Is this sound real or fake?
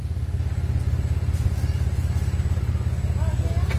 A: real